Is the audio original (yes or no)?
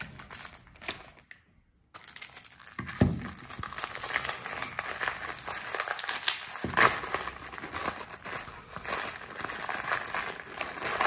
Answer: yes